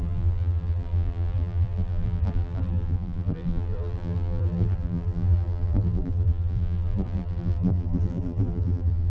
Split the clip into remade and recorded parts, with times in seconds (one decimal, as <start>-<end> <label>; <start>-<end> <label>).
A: 0.0-9.1 remade

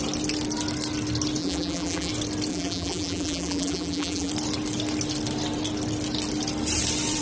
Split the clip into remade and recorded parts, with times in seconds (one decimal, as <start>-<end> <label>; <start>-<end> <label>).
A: 0.0-1.4 recorded; 1.4-2.1 remade; 2.1-2.5 recorded; 2.5-4.3 remade; 4.3-7.2 recorded

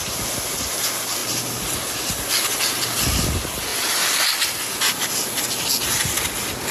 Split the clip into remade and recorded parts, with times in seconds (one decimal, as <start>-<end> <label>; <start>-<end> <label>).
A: 0.0-6.7 recorded

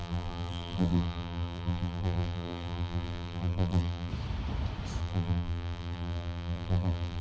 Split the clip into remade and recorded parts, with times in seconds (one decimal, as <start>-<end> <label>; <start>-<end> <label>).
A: 0.0-4.1 remade; 4.1-5.0 recorded; 5.0-7.2 remade

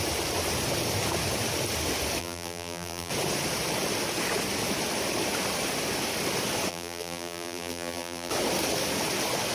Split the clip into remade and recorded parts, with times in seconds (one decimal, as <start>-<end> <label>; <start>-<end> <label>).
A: 0.0-2.2 recorded; 2.2-3.1 remade; 3.1-6.7 recorded; 6.7-8.3 remade; 8.3-9.5 recorded

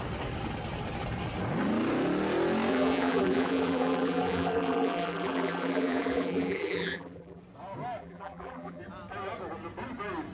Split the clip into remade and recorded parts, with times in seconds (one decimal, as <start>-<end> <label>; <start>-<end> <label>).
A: 0.0-2.7 recorded; 2.7-7.4 remade; 7.4-8.0 recorded; 8.0-8.8 remade; 8.8-10.3 recorded

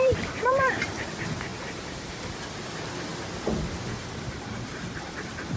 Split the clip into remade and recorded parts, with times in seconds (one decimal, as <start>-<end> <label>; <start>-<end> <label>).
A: 0.0-3.1 remade; 3.1-4.7 recorded; 4.7-5.6 remade

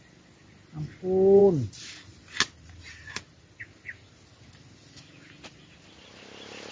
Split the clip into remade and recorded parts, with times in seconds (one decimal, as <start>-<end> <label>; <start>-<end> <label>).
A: 0.0-6.7 recorded